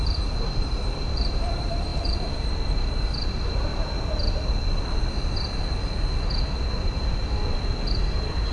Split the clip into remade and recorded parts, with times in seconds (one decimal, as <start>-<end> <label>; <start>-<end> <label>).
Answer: 0.0-3.7 remade; 3.7-6.8 recorded; 6.8-7.2 remade; 7.2-7.9 recorded; 7.9-8.5 remade